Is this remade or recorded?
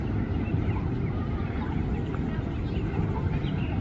remade